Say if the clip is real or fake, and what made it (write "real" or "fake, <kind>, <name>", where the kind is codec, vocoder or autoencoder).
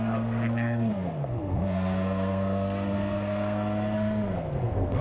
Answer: fake, codec, SNAC